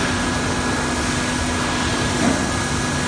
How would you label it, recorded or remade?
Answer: recorded